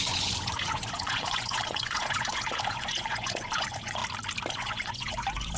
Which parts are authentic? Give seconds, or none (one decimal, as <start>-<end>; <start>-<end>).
4.0-4.5